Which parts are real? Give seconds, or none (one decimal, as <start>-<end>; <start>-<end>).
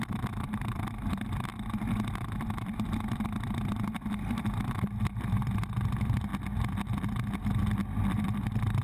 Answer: 1.5-2.1; 6.3-8.0